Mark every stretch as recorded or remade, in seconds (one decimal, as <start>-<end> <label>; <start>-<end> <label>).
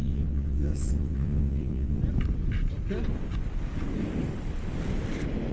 0.0-2.0 remade; 2.0-5.5 recorded